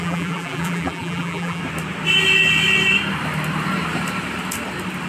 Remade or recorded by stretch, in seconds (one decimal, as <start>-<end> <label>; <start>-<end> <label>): 0.0-1.6 remade; 1.6-5.1 recorded